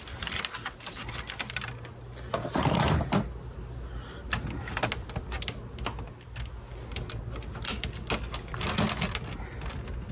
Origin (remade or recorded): recorded